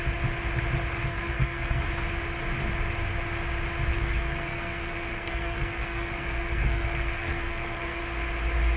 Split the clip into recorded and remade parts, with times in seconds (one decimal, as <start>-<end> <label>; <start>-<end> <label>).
0.0-1.1 recorded; 1.1-1.8 remade; 1.8-3.9 recorded; 3.9-8.0 remade; 8.0-8.8 recorded